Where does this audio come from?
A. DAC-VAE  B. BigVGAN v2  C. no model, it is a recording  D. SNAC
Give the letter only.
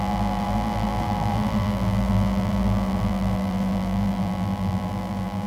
B